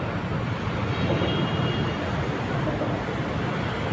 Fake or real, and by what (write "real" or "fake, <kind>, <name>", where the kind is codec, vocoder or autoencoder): real